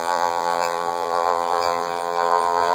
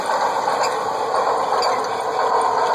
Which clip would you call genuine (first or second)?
second